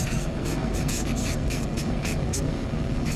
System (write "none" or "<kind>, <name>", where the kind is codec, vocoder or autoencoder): codec, SNAC